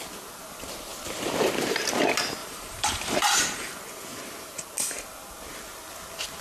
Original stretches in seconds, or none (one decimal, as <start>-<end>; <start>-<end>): 0.0-2.4; 3.8-6.4